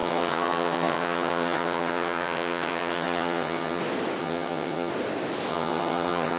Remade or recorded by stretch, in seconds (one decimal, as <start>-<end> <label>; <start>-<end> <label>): 0.0-3.8 remade; 3.8-4.2 recorded; 4.2-4.9 remade; 4.9-5.5 recorded; 5.5-6.4 remade